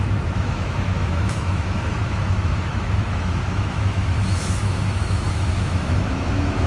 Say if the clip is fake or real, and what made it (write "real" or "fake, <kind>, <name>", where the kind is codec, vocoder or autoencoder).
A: fake, autoencoder, DAC-VAE